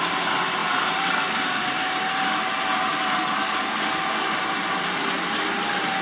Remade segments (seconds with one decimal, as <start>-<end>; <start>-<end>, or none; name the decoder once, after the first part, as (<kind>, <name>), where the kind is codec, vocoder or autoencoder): 0.6-1.4 (vocoder, BigVGAN v2)